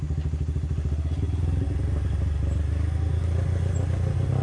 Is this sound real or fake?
real